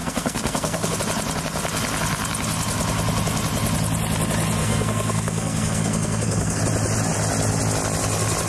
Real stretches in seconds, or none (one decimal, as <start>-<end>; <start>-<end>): 1.0-4.6; 6.6-8.5